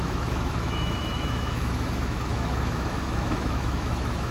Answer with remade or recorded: remade